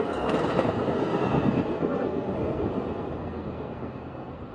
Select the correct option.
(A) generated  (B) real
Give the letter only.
A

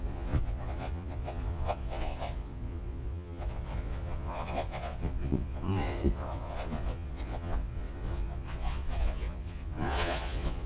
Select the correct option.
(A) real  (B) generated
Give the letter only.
B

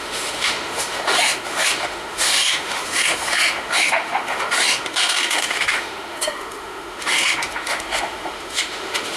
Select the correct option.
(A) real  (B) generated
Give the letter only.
B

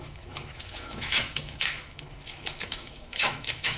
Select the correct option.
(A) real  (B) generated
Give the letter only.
B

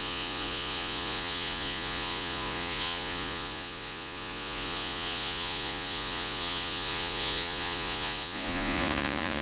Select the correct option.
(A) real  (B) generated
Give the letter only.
B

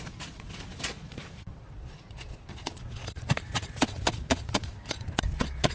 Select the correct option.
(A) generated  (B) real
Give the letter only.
A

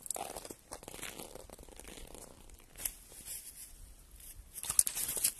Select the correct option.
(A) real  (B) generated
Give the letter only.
A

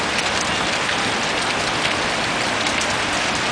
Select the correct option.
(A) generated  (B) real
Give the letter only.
B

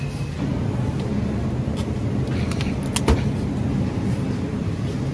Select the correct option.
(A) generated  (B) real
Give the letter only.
B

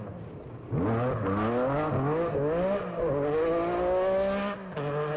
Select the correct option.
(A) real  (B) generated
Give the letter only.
A